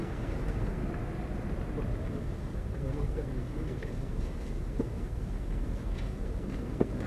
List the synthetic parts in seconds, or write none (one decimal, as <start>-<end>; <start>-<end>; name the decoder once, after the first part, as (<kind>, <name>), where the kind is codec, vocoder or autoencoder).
0.0-0.8 (codec, SNAC); 2.0-7.1